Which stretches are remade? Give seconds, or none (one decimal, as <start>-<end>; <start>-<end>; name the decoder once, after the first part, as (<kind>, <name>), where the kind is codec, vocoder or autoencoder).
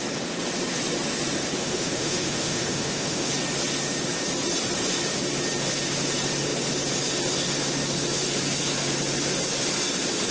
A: 1.6-3.3 (autoencoder, DAC-VAE)